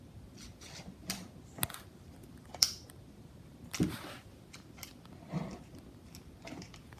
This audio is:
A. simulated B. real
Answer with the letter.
B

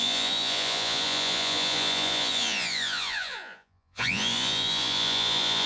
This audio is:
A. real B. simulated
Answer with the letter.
B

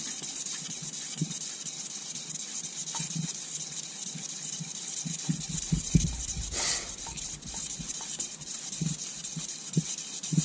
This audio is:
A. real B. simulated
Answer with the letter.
A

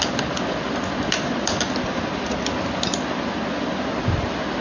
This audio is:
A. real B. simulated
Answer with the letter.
A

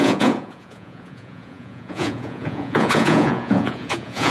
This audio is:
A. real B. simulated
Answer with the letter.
B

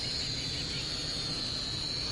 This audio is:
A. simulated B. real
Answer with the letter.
B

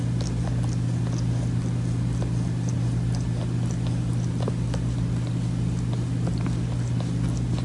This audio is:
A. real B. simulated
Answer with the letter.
A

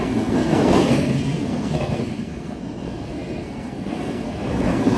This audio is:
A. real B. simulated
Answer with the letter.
B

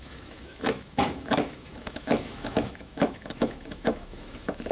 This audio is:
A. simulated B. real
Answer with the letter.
A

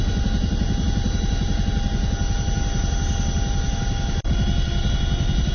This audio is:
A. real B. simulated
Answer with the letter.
A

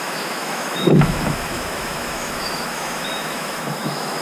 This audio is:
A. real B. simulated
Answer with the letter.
B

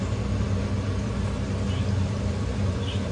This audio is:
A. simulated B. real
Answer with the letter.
B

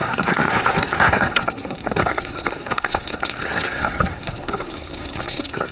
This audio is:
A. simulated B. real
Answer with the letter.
A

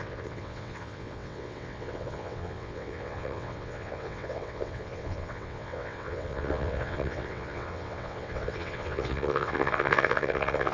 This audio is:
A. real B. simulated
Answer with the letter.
B